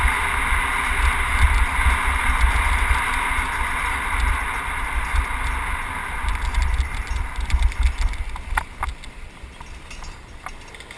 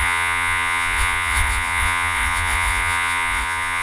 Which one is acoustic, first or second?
first